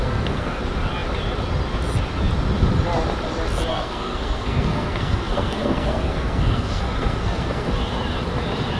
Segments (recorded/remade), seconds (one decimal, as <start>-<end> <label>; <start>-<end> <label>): 0.0-0.6 remade; 0.6-3.7 recorded; 3.7-7.7 remade; 7.7-8.8 recorded